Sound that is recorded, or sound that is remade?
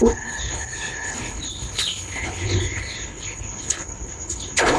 remade